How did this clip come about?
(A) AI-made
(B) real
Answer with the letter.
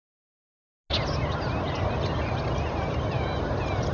B